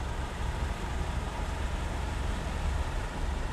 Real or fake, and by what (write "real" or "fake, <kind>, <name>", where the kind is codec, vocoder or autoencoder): fake, vocoder, BigVGAN v2